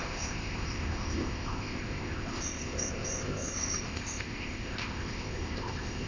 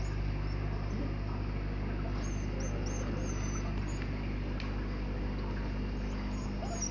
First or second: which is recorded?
second